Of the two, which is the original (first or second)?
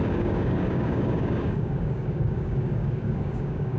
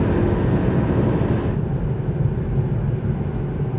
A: second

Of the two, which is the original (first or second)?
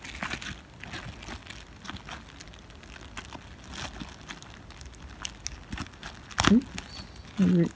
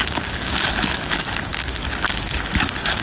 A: first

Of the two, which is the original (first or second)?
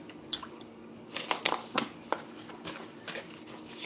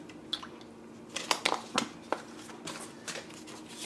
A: second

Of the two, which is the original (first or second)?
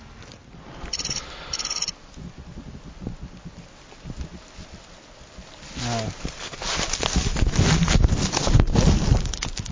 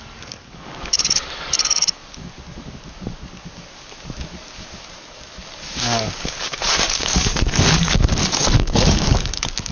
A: first